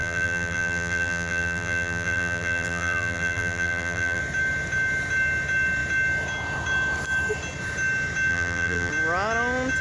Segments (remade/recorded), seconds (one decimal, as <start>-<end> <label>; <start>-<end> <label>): 0.0-4.2 remade; 4.2-8.3 recorded; 8.3-8.9 remade; 8.9-9.8 recorded